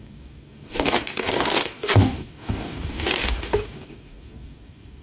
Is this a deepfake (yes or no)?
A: yes